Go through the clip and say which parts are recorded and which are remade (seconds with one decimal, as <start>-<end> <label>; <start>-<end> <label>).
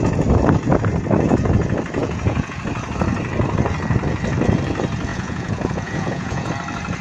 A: 0.0-2.0 recorded; 2.0-2.6 remade; 2.6-5.1 recorded; 5.1-6.5 remade; 6.5-7.0 recorded